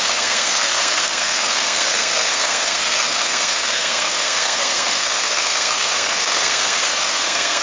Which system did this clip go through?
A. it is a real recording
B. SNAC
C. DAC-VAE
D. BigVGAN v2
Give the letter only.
B